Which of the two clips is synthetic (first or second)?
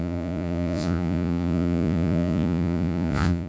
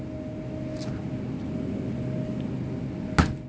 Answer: first